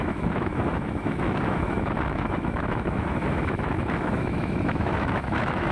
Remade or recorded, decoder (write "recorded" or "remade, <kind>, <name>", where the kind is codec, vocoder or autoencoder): remade, autoencoder, DAC-VAE